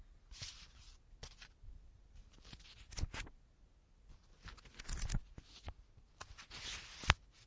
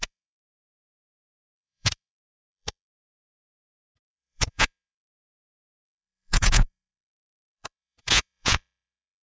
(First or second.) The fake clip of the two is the second